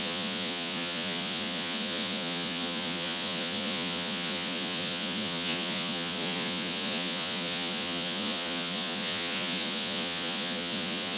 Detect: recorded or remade remade